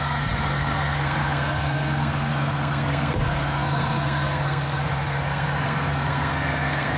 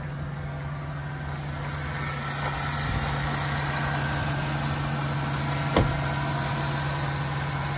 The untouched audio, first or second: second